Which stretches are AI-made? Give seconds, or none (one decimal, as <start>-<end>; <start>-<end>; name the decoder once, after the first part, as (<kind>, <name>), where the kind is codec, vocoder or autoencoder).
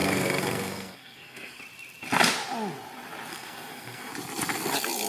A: 0.0-1.6 (codec, SNAC); 3.3-4.1